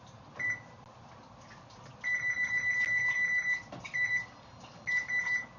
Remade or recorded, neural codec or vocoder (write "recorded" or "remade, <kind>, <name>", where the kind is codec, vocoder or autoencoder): recorded